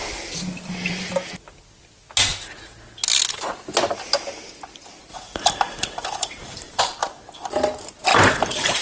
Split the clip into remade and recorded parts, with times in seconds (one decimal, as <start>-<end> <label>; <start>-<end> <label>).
0.0-5.1 recorded; 5.1-6.8 remade; 6.8-8.1 recorded; 8.1-8.8 remade